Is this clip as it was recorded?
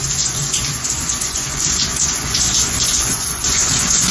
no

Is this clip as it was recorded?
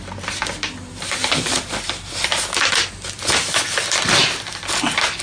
yes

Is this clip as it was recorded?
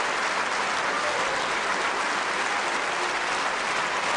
yes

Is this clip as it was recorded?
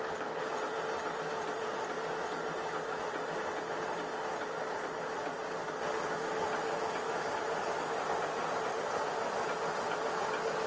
yes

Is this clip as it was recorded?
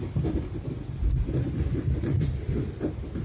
yes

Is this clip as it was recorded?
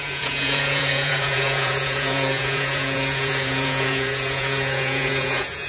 no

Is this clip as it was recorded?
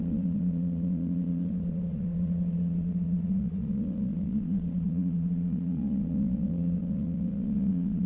no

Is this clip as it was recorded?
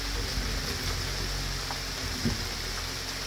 yes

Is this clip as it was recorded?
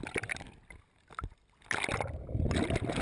yes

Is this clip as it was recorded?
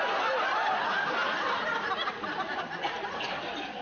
yes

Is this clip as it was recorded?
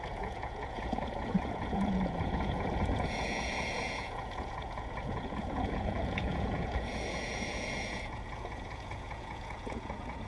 no